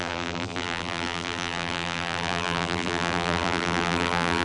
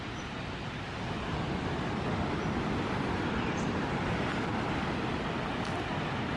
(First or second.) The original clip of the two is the second